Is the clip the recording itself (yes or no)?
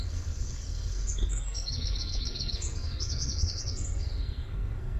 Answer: no